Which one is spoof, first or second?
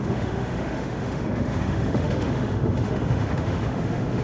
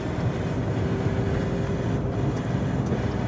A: first